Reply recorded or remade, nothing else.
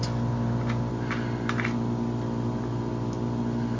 recorded